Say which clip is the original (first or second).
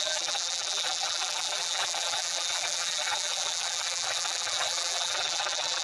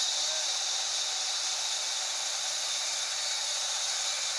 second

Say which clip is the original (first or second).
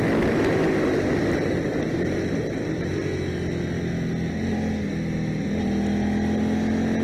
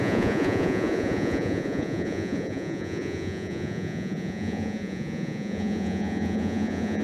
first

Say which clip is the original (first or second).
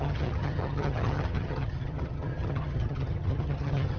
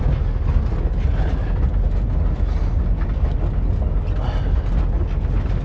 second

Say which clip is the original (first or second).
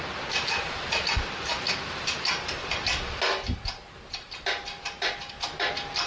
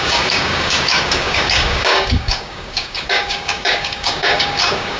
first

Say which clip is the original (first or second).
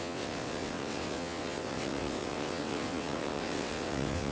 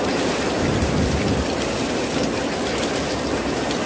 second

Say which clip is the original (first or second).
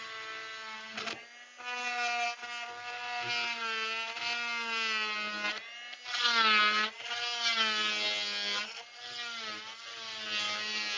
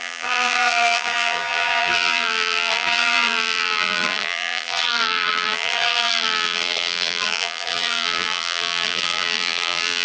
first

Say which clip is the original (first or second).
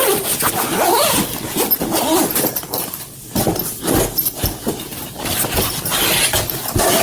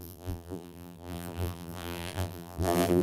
first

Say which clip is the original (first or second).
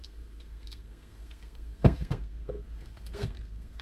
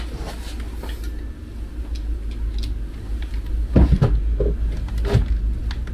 second